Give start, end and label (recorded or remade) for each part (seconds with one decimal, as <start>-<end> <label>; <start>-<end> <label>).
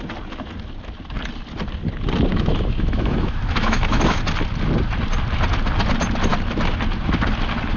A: 0.0-2.3 recorded; 2.3-4.2 remade; 4.2-7.8 recorded